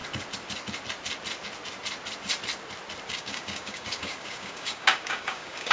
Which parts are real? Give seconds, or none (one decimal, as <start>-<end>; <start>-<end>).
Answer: 0.0-3.1